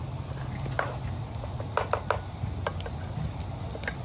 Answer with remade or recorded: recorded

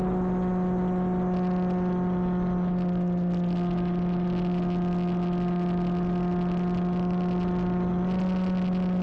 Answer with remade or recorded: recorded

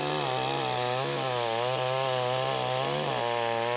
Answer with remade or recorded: recorded